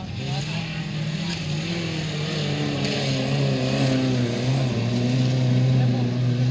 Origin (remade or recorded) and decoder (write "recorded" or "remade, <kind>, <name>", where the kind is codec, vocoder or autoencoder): recorded